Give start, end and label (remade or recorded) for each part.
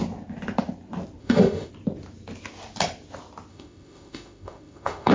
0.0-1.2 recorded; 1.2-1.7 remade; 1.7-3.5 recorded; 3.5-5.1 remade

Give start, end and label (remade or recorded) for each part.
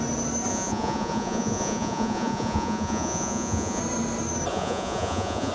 0.0-0.5 recorded; 0.5-3.8 remade; 3.8-4.5 recorded; 4.5-5.5 remade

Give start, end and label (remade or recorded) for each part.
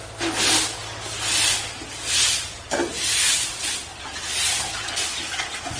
0.0-5.8 recorded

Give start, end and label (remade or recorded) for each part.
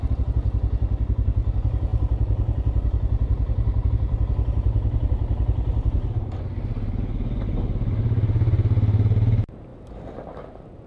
0.0-10.9 recorded